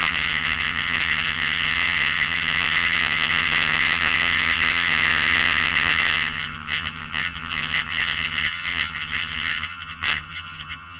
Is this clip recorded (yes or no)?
no